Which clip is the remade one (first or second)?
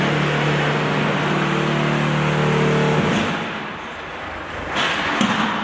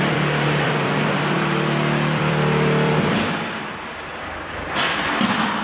second